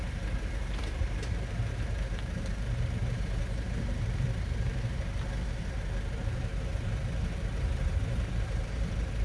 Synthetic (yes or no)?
yes